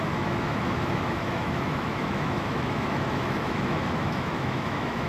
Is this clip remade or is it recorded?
remade